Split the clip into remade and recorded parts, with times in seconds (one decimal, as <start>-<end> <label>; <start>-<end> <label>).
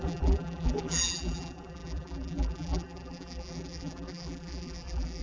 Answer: 0.0-5.2 remade